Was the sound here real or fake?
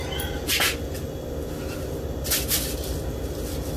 real